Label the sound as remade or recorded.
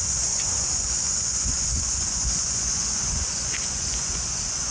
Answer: remade